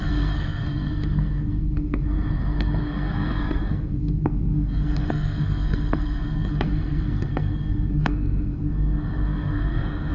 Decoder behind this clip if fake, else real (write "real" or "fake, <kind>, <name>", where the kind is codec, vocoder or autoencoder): fake, codec, SNAC